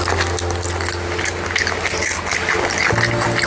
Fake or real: real